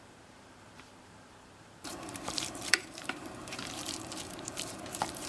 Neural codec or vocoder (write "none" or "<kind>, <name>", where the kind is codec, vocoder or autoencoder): vocoder, BigVGAN v2